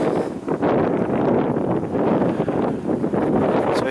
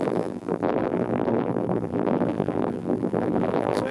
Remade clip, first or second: second